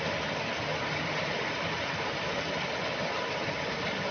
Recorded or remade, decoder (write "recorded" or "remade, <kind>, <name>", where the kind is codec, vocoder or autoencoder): recorded